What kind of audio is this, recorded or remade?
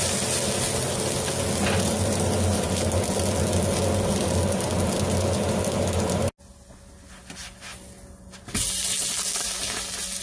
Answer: recorded